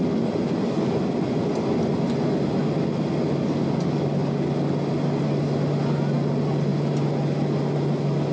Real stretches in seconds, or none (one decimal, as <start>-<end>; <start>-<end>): 0.0-8.3